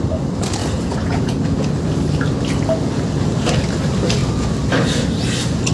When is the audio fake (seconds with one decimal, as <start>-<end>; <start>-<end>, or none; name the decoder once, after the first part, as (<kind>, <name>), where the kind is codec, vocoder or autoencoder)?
0.6-1.7 (vocoder, Vocos)